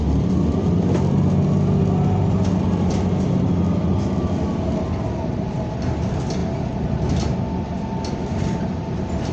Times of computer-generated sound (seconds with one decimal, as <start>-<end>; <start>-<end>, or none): none